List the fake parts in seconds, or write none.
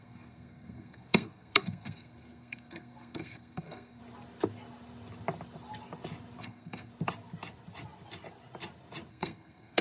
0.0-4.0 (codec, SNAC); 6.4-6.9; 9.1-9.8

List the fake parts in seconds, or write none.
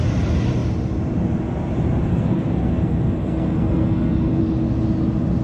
2.1-4.4 (codec, SNAC)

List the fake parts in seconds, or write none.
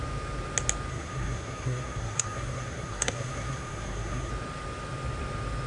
0.9-4.3 (codec, SNAC)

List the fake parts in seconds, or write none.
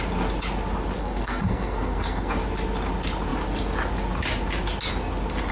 1.0-2.3 (codec, SNAC)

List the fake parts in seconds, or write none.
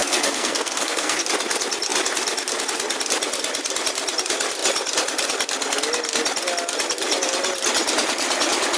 0.0-1.2 (codec, SNAC)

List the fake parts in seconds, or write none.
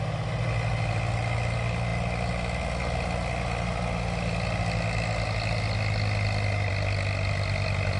none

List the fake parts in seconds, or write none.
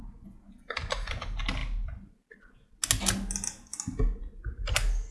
none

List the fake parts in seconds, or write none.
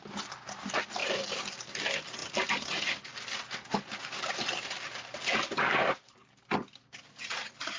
none